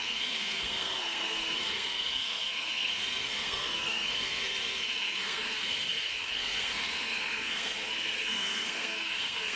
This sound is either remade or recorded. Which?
remade